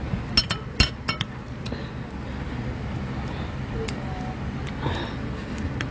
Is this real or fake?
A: real